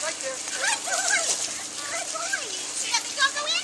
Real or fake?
real